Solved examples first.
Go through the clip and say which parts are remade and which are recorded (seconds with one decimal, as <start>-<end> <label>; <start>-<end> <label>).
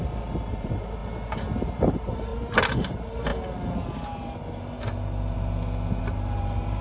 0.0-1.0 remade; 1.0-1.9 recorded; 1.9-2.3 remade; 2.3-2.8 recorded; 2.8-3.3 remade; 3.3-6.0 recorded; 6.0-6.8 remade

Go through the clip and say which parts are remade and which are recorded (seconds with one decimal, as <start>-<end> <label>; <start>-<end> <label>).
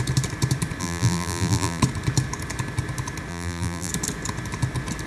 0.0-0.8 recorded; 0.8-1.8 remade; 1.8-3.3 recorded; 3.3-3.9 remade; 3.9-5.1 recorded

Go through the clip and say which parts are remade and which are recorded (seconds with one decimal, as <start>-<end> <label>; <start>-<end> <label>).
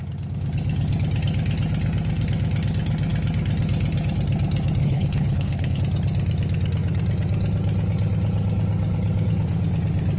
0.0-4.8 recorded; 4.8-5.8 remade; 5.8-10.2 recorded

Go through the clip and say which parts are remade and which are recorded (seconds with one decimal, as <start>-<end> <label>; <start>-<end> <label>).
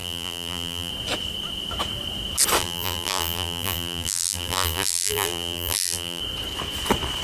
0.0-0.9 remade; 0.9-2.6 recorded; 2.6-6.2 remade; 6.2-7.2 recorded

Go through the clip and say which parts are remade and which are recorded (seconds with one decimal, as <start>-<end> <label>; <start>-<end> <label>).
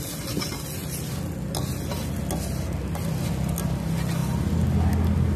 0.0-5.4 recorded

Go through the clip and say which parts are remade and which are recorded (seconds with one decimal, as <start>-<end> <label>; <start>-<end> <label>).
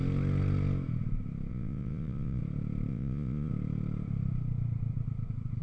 0.0-1.5 recorded; 1.5-2.4 remade; 2.4-2.9 recorded; 2.9-3.5 remade; 3.5-5.6 recorded